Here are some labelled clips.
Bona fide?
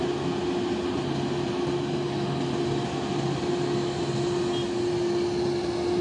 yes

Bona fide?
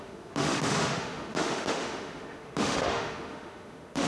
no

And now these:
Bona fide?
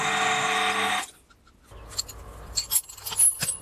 yes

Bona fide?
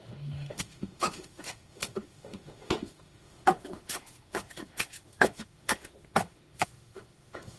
no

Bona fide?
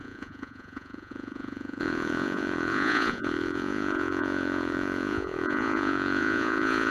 no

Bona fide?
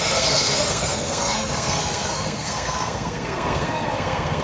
no